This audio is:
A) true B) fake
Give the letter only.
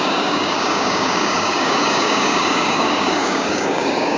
B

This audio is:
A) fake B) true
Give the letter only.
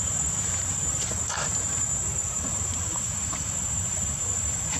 A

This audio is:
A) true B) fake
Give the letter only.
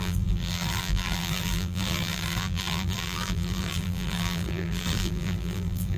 B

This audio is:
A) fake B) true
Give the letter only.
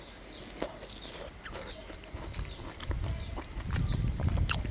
B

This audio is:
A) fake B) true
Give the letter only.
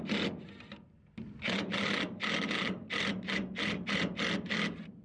B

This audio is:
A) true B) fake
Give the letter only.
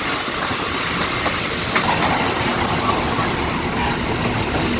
A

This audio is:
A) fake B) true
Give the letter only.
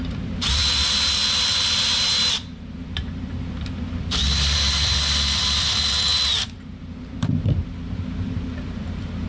A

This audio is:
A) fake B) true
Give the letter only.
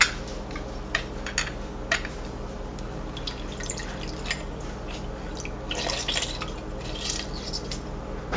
B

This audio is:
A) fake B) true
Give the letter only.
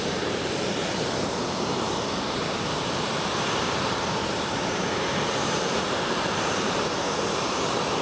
A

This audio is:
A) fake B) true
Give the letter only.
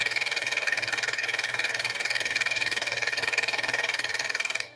A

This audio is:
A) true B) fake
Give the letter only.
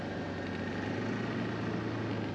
A